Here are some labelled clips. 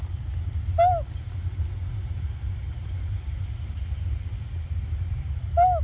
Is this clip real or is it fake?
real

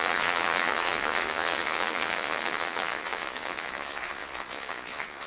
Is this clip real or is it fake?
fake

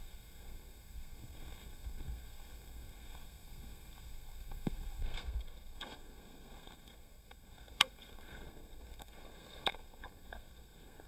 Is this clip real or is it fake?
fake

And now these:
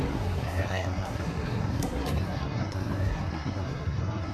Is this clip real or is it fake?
fake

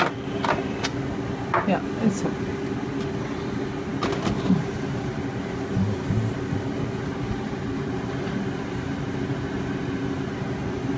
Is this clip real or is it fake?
real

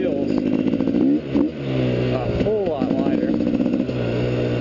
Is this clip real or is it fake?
real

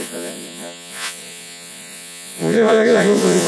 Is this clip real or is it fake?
fake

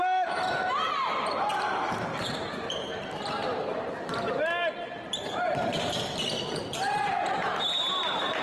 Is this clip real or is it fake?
fake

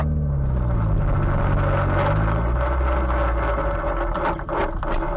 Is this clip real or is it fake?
real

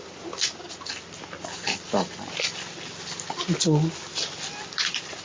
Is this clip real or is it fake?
real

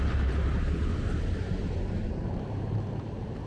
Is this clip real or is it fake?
fake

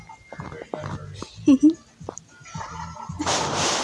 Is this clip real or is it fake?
real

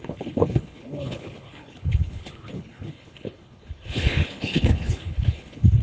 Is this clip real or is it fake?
fake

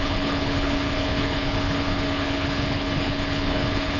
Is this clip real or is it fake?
fake